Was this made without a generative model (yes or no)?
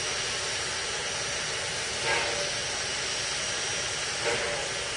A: yes